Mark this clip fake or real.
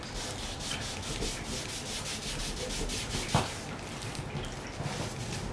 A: real